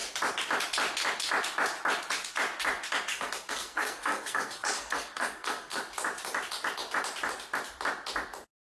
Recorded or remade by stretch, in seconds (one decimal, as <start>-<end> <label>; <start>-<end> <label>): 0.0-3.1 recorded; 3.1-5.8 remade; 5.8-8.8 recorded